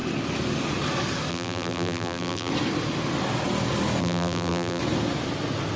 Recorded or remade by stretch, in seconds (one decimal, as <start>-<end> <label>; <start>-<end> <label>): 0.0-1.3 recorded; 1.3-2.5 remade; 2.5-4.0 recorded; 4.0-4.8 remade; 4.8-5.8 recorded